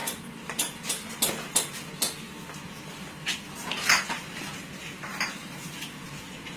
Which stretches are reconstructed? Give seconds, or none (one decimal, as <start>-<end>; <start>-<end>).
0.0-1.3; 5.1-5.8